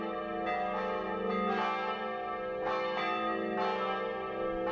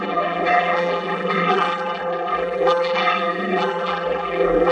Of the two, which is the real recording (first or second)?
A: first